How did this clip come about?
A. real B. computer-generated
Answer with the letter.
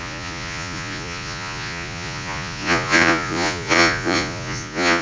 B